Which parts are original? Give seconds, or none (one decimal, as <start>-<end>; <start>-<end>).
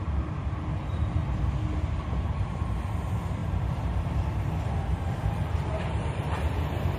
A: 1.2-2.0